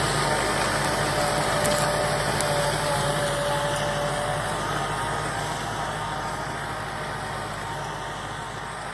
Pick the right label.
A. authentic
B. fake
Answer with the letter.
A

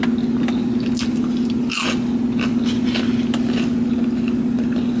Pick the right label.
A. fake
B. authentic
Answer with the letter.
B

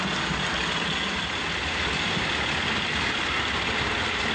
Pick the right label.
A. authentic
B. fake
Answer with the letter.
A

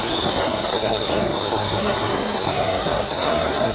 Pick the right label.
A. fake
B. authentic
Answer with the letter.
A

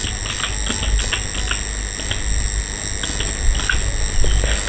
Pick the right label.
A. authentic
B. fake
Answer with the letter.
A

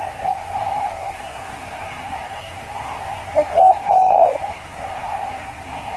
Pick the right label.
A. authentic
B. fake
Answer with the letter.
B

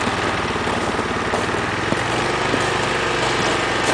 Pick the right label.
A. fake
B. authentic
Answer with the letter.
B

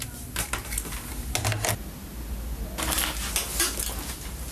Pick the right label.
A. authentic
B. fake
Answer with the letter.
A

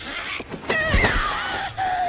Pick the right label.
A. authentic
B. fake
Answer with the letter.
A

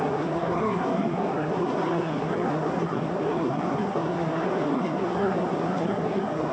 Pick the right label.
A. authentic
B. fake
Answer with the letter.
B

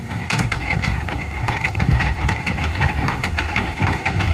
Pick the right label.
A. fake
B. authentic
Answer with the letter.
A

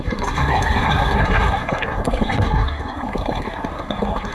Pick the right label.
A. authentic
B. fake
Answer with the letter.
B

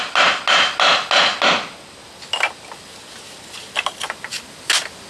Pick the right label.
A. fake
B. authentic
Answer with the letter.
B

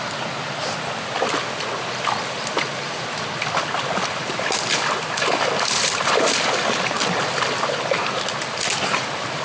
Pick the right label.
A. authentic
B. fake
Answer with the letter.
A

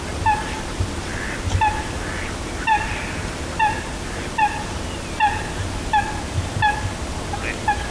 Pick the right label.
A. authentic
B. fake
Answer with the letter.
A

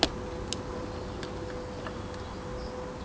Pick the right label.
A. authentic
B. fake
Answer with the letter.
A